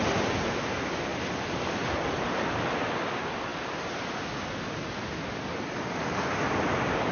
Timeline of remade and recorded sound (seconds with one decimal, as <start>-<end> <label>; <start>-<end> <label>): 0.0-7.1 recorded